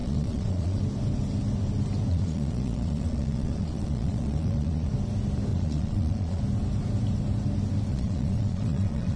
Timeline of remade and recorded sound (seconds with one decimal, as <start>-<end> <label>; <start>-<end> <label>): 0.0-0.8 remade; 0.8-2.1 recorded; 2.1-4.9 remade; 4.9-5.5 recorded; 5.5-6.4 remade; 6.4-7.9 recorded; 7.9-9.2 remade